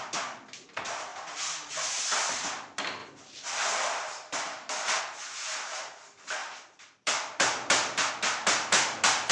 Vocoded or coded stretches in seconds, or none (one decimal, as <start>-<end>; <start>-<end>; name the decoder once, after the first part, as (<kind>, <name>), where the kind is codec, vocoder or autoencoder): 1.1-1.7 (vocoder, BigVGAN v2); 6.4-8.1